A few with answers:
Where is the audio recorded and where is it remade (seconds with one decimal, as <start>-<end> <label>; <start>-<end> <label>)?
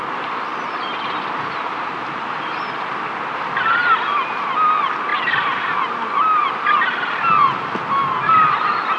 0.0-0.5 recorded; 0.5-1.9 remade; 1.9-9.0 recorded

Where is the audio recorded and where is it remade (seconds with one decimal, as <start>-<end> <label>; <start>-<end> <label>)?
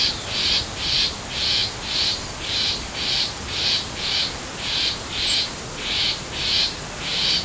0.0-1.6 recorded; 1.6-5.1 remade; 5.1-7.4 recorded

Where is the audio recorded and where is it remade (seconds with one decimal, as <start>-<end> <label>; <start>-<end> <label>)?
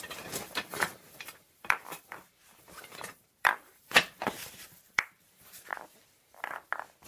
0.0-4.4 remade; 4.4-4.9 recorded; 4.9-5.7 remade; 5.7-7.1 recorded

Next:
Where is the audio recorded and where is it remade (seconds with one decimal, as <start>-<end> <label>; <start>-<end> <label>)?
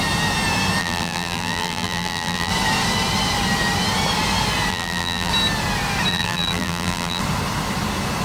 0.0-0.8 recorded; 0.8-2.5 remade; 2.5-4.7 recorded; 4.7-5.3 remade; 5.3-6.1 recorded; 6.1-7.2 remade; 7.2-8.2 recorded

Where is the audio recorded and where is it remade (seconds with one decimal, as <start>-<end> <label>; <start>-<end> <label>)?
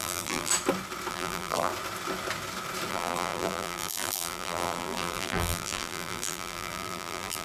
0.0-0.5 remade; 0.5-1.1 recorded; 1.1-1.7 remade; 1.7-2.9 recorded; 2.9-7.4 remade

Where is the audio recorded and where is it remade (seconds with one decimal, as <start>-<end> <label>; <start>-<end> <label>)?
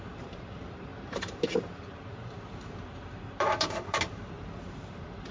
0.0-5.3 remade